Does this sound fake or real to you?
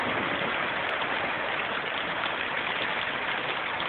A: real